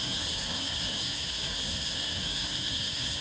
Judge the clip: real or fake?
fake